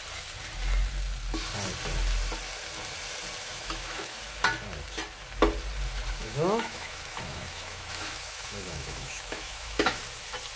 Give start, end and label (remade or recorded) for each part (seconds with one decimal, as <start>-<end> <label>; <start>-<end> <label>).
0.0-3.4 recorded; 3.4-4.2 remade; 4.2-6.2 recorded; 6.2-10.0 remade; 10.0-10.6 recorded